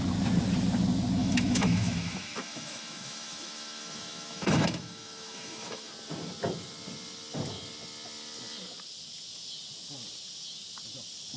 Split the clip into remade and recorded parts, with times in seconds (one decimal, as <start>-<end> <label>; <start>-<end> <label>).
0.0-1.2 recorded; 1.2-5.9 remade; 5.9-11.4 recorded